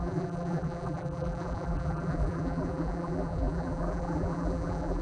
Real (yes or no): no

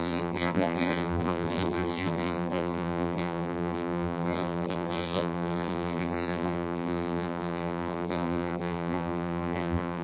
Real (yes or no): no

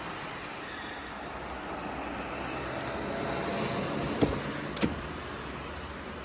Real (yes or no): yes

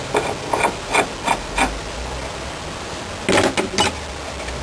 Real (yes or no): yes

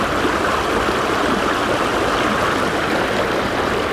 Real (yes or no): yes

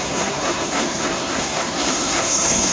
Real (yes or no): no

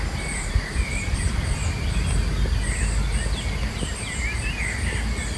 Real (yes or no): yes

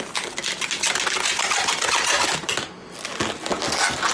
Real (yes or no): yes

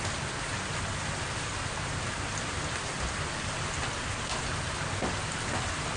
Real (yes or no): yes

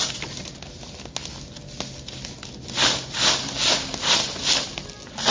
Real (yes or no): yes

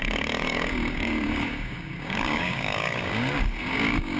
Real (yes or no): no